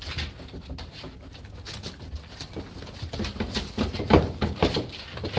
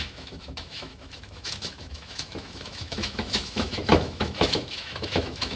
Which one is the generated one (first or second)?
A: second